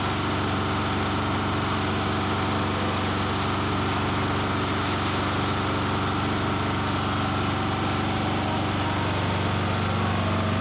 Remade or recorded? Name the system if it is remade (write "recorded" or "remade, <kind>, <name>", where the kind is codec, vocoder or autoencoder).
recorded